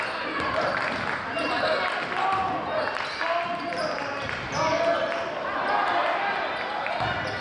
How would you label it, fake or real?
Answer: real